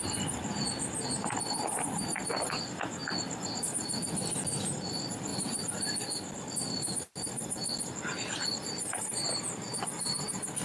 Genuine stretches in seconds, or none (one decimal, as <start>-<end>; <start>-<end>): 0.0-10.6